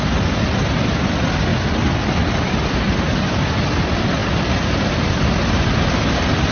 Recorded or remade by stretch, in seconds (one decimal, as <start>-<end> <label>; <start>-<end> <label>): 0.0-6.5 recorded